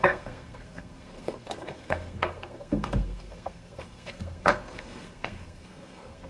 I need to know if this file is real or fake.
fake